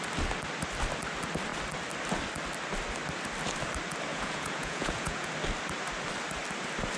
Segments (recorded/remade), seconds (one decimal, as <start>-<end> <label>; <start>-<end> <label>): 0.0-4.1 recorded; 4.1-5.3 remade; 5.3-7.0 recorded